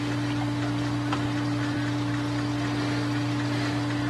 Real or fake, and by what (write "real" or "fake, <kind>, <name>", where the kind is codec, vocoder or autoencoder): real